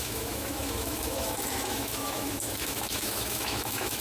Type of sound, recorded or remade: remade